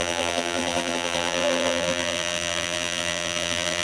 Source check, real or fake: fake